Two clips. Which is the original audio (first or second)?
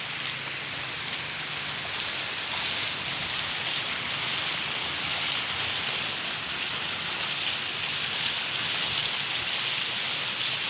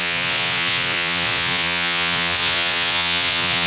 first